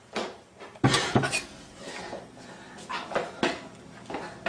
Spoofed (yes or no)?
no